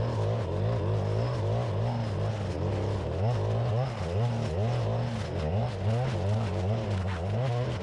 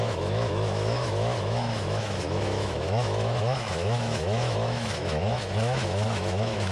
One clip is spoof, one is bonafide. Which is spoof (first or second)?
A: second